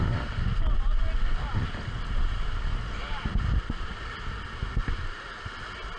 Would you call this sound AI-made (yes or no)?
no